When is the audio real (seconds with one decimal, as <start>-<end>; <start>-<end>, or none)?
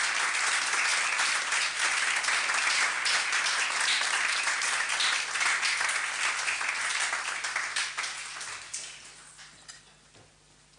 0.0-10.8